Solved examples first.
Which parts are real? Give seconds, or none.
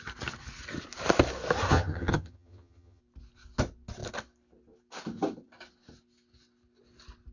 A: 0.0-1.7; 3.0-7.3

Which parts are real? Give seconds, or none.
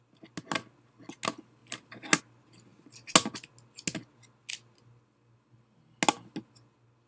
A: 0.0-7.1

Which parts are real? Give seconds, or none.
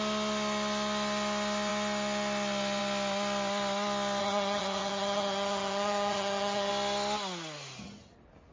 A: 0.0-4.2; 6.7-8.5